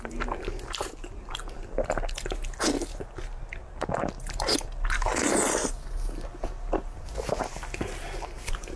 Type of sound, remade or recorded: recorded